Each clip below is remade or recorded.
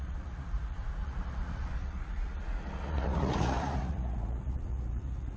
remade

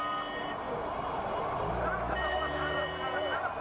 recorded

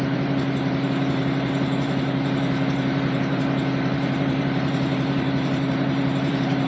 remade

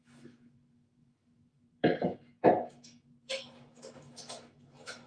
remade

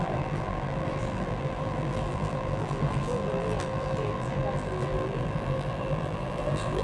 remade